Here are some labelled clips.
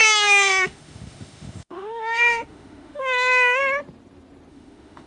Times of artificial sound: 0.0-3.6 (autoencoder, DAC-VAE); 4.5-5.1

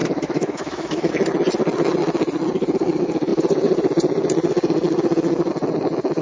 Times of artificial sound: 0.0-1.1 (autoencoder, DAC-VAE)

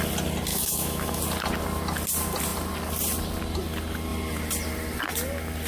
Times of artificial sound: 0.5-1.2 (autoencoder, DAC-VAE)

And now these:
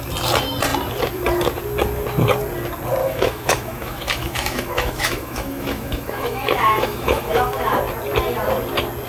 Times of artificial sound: 3.0-7.8 (autoencoder, DAC-VAE)

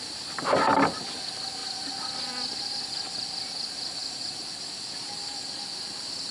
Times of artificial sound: none

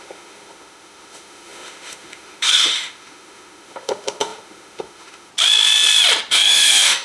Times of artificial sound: 0.0-5.3 (autoencoder, DAC-VAE); 6.3-7.0